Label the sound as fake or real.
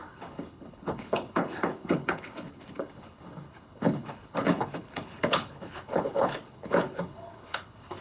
fake